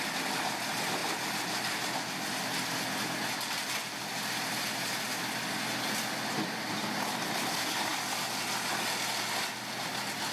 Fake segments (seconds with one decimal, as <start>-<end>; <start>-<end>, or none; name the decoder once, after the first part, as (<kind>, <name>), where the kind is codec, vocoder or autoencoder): none

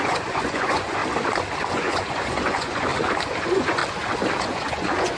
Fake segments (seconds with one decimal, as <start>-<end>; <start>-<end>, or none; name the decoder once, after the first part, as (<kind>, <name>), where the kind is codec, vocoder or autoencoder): 0.0-1.0 (vocoder, Vocos); 1.7-2.9; 3.4-3.8; 4.4-5.2

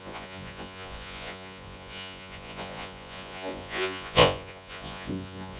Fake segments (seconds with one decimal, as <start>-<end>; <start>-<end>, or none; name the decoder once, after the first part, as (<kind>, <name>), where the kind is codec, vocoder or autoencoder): 0.0-5.6 (vocoder, Vocos)

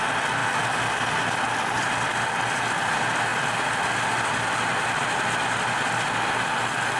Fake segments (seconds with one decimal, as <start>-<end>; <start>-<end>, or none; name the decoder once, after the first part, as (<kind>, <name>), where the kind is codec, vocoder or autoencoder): none

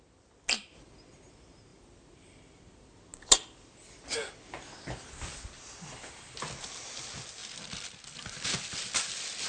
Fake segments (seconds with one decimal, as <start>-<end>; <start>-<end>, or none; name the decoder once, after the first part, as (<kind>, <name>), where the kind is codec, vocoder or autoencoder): none

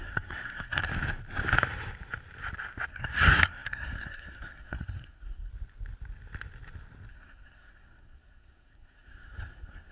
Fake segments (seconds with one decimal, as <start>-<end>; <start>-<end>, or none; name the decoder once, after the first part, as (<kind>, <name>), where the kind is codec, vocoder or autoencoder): 0.0-0.9 (codec, SNAC); 2.9-5.5; 7.1-9.9

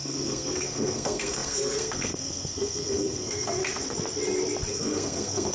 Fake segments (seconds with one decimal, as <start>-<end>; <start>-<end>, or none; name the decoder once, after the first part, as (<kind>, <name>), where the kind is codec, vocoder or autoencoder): 0.0-3.6 (codec, SNAC); 4.7-5.5

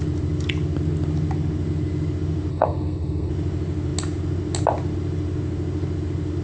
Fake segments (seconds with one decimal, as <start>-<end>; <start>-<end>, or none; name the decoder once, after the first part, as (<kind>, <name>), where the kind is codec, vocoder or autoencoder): 2.5-3.3 (codec, SNAC)